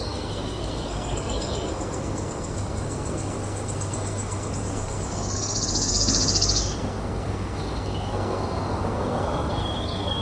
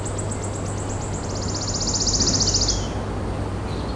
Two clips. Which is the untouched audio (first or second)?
second